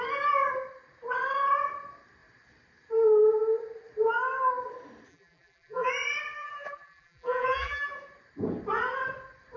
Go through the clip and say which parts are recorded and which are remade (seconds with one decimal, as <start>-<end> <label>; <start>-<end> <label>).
0.0-5.1 recorded; 5.1-5.9 remade; 5.9-6.4 recorded; 6.4-7.9 remade; 7.9-9.6 recorded